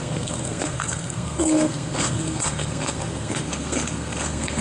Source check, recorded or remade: remade